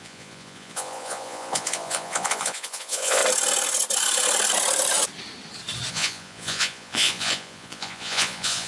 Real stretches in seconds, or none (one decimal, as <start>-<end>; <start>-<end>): 3.2-5.9